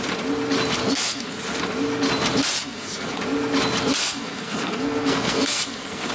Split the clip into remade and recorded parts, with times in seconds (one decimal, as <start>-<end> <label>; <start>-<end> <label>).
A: 0.0-0.8 recorded; 0.8-1.3 remade; 1.3-2.6 recorded; 2.6-3.2 remade; 3.2-4.0 recorded; 4.0-6.1 remade